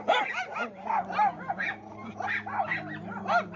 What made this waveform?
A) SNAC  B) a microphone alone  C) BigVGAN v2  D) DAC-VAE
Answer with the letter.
B